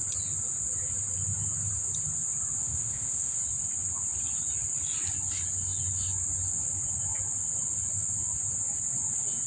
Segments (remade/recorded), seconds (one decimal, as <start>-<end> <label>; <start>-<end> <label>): 0.0-2.6 recorded; 2.6-3.4 remade; 3.4-9.5 recorded